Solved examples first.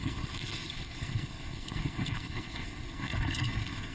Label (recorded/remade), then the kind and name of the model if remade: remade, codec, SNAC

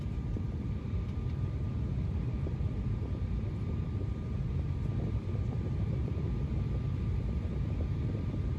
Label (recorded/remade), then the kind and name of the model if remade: remade, vocoder, BigVGAN v2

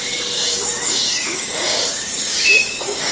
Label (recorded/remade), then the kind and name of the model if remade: remade, codec, DAC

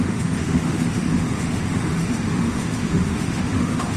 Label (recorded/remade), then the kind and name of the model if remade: remade, autoencoder, DAC-VAE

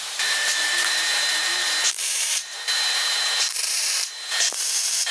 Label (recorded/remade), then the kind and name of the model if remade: remade, vocoder, BigVGAN v2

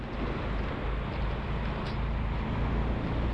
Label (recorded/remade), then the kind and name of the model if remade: recorded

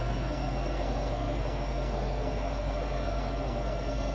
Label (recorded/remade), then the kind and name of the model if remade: remade, codec, SNAC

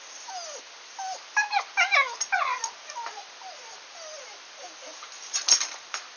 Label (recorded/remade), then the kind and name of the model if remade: recorded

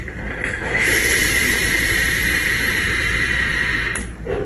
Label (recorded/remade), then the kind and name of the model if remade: remade, vocoder, BigVGAN v2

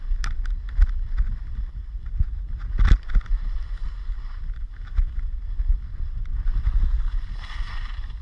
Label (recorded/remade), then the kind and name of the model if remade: recorded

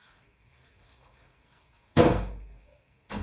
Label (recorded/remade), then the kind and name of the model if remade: remade, codec, SNAC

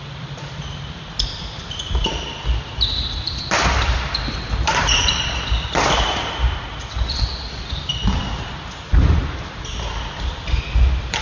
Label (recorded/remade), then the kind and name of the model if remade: recorded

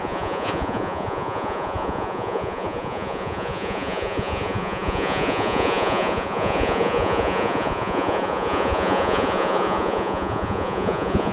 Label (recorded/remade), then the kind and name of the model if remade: remade, vocoder, Vocos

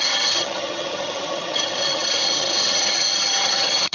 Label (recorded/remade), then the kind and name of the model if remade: remade, vocoder, HiFi-GAN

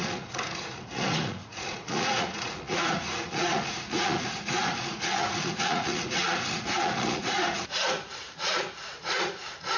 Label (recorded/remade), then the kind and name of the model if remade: remade, vocoder, Vocos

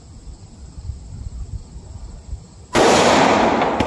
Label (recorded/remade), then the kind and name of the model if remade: recorded